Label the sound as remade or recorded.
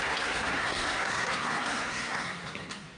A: remade